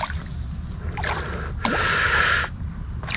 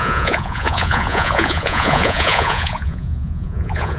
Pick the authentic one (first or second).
first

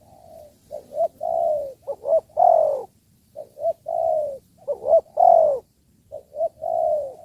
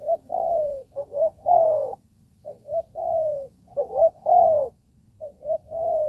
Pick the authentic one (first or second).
first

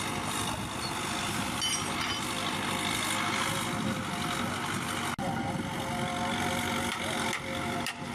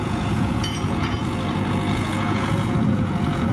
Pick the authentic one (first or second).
first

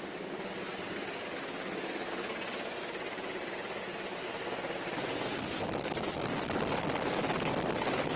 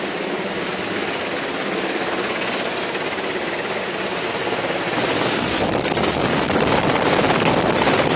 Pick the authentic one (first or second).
first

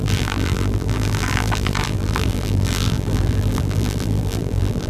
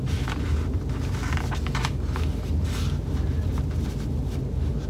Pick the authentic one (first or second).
second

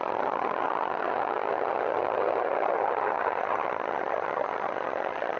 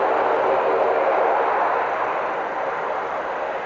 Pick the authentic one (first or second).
second